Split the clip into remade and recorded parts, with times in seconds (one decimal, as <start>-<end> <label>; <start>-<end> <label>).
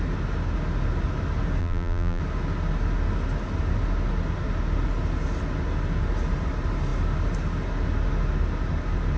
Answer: 0.0-1.6 recorded; 1.6-2.2 remade; 2.2-9.2 recorded